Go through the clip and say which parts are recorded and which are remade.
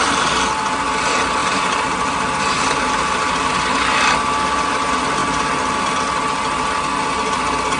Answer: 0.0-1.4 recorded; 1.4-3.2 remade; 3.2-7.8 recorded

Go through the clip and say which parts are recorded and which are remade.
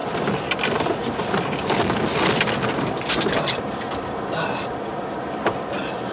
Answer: 0.0-6.1 recorded